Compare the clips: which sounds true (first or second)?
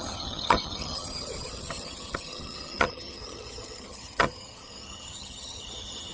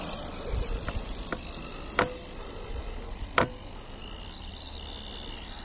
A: second